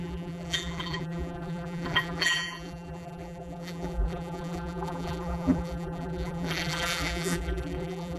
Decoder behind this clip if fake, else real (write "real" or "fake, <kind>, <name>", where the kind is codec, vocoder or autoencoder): fake, vocoder, BigVGAN v2